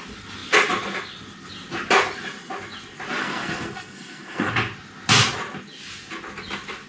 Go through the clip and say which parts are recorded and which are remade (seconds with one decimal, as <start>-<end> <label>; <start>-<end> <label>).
0.0-3.2 recorded; 3.2-4.5 remade; 4.5-6.9 recorded